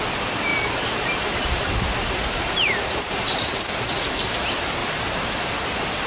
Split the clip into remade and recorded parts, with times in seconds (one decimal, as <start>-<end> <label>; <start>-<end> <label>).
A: 0.0-0.5 recorded; 0.5-3.8 remade; 3.8-4.8 recorded; 4.8-5.5 remade; 5.5-6.1 recorded